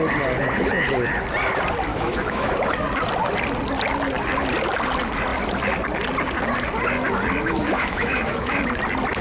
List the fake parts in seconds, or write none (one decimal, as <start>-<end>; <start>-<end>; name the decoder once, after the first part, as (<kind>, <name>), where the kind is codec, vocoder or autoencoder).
1.9-2.5 (autoencoder, DAC-VAE); 7.4-8.6